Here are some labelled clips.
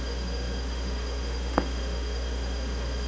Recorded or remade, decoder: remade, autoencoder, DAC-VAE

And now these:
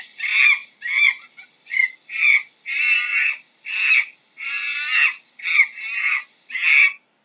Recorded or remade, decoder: recorded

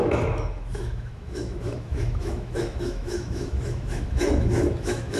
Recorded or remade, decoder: remade, autoencoder, DAC-VAE